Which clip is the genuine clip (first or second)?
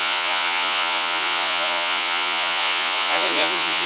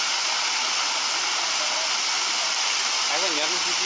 second